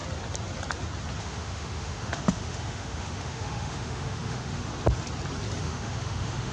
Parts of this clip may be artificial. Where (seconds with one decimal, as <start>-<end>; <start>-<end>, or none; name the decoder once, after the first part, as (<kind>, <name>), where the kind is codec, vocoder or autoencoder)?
1.2-4.7 (autoencoder, DAC-VAE); 5.6-6.5